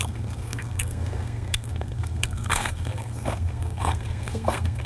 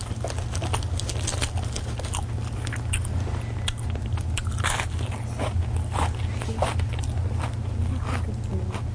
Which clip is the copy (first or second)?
first